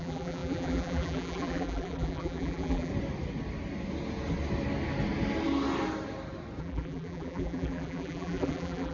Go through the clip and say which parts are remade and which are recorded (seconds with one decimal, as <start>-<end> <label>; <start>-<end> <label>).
0.0-2.9 remade; 2.9-6.6 recorded; 6.6-8.9 remade

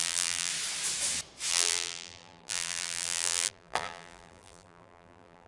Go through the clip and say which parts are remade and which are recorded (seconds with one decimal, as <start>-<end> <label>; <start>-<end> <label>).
0.0-0.5 remade; 0.5-1.5 recorded; 1.5-5.5 remade

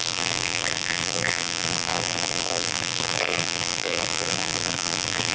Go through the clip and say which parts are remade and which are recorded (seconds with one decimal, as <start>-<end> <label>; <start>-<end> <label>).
0.0-5.3 remade

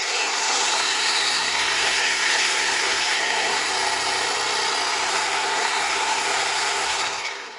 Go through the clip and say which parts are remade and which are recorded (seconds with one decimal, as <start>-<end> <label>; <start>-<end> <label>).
0.0-3.7 remade; 3.7-5.1 recorded; 5.1-7.6 remade

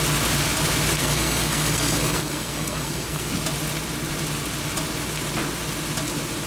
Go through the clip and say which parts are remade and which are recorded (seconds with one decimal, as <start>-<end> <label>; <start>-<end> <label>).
0.0-1.0 recorded; 1.0-3.3 remade; 3.3-6.5 recorded

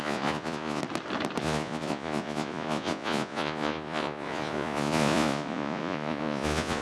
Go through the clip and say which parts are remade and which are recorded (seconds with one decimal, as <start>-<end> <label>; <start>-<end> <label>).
0.0-0.8 remade; 0.8-1.4 recorded; 1.4-6.8 remade